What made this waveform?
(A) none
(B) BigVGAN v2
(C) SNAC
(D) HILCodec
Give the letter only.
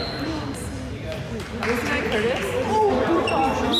A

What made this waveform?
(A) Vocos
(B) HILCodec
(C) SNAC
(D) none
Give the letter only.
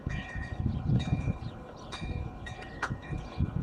B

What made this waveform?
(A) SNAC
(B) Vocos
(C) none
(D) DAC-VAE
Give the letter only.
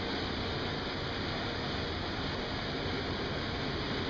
C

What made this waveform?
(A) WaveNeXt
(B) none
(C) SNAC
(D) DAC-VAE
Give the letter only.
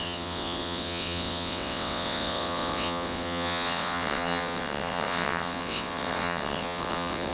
A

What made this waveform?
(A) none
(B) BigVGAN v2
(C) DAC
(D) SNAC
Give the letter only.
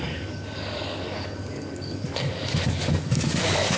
C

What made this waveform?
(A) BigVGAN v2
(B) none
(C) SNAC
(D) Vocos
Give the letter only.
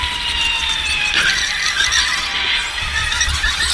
B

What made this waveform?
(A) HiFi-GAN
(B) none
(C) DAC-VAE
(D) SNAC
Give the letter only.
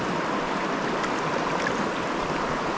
B